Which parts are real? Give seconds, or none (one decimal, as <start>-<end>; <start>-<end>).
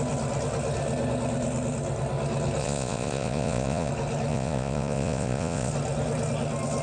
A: 0.0-2.6; 3.9-4.3; 5.7-6.8